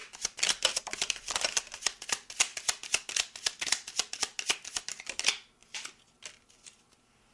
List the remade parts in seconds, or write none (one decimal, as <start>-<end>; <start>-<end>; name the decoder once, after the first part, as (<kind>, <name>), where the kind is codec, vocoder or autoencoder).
none